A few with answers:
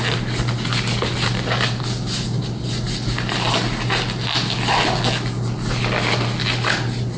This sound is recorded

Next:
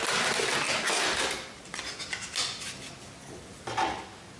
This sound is recorded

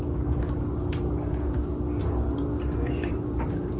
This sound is remade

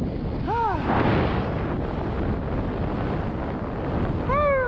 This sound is recorded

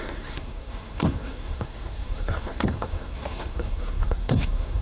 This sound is remade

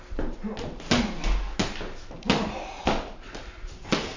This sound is recorded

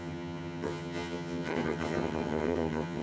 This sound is remade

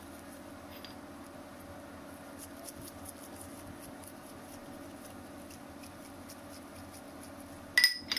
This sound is recorded